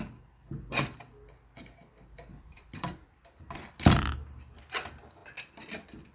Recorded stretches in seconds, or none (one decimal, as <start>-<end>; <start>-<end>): 0.0-2.3; 4.1-5.2